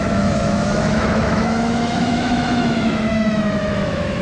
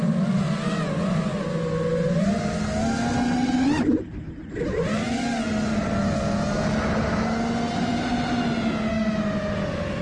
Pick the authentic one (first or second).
second